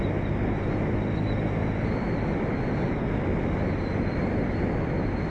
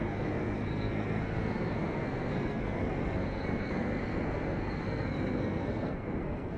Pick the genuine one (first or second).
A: first